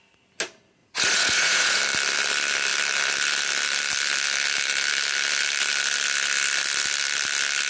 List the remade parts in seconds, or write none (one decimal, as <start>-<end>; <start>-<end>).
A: 0.8-1.8